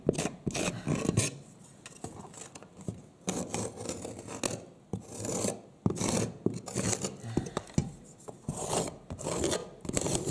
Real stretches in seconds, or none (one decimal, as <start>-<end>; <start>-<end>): 0.0-10.3

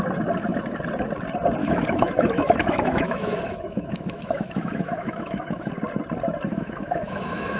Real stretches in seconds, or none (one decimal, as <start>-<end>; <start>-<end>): 0.0-1.6; 5.7-6.5

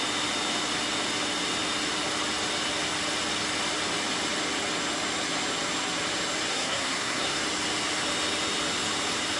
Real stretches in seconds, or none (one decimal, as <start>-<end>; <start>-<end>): 0.0-6.5; 7.4-9.4

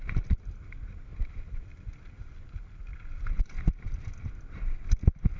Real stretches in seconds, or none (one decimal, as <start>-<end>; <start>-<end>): 0.0-2.9; 3.6-5.4

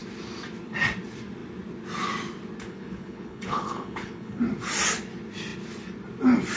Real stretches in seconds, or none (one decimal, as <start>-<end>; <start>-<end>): 0.0-2.7; 4.4-6.6

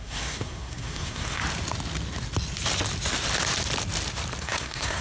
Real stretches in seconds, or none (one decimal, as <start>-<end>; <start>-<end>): 1.4-4.4

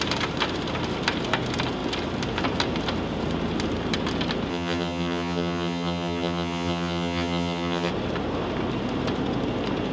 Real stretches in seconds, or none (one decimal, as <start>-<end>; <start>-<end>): 0.0-4.5; 7.9-9.9

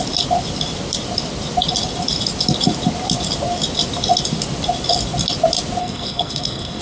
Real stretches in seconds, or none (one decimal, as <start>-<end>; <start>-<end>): 0.0-5.8